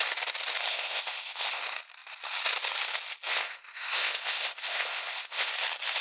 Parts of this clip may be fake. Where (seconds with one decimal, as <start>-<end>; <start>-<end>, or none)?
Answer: 0.7-1.6; 3.3-5.5